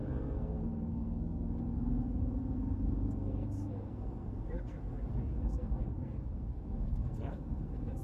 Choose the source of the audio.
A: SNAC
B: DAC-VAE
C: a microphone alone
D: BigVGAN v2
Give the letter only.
A